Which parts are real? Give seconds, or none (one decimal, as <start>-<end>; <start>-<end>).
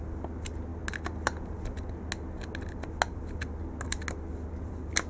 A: 0.0-5.1